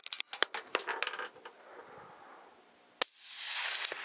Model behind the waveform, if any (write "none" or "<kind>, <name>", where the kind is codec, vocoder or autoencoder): none